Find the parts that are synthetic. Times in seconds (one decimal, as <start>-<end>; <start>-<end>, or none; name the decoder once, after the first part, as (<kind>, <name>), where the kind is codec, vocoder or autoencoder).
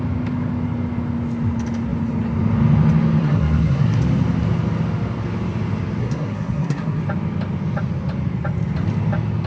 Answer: 3.2-4.0 (codec, SNAC); 6.0-7.0